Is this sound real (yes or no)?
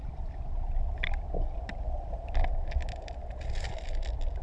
yes